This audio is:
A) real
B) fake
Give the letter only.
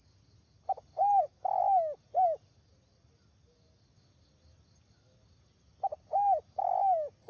A